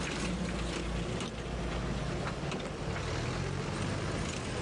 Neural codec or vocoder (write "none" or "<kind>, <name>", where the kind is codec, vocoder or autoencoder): none